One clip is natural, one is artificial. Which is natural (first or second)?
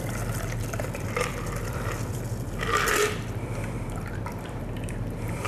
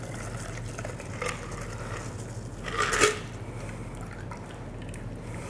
second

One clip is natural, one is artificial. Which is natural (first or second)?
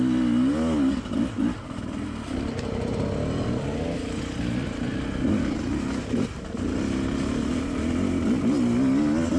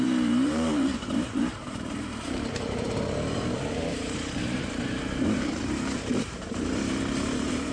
first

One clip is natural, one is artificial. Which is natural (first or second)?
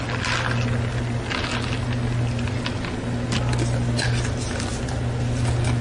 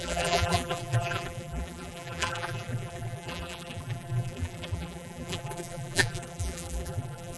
first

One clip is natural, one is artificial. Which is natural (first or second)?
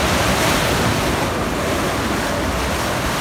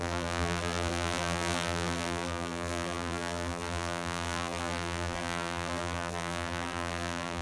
first